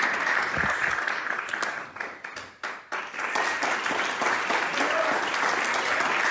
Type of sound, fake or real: real